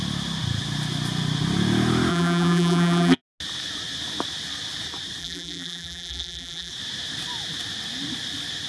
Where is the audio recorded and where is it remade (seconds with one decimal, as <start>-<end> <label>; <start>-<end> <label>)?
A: 0.0-2.1 recorded; 2.1-3.2 remade; 3.2-5.2 recorded; 5.2-6.7 remade; 6.7-8.7 recorded